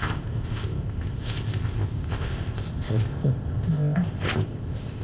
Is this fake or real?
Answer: fake